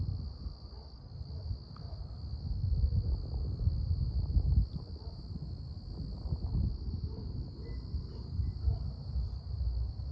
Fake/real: real